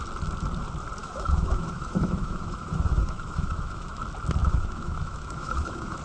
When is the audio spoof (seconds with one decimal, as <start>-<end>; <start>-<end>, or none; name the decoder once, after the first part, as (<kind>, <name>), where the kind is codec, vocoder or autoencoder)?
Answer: 1.0-4.0 (autoencoder, DAC-VAE); 4.4-6.0